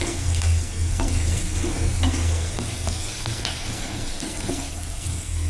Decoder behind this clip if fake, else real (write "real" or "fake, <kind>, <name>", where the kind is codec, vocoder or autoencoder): fake, codec, SNAC